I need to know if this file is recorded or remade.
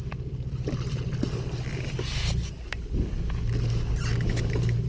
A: recorded